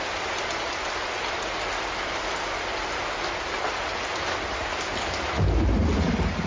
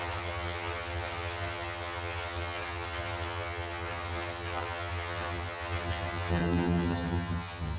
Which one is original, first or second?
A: first